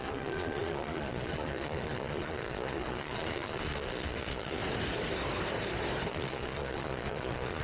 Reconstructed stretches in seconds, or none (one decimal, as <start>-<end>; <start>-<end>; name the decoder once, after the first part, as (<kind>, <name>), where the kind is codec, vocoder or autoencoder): 0.0-4.6 (vocoder, Vocos); 6.1-7.6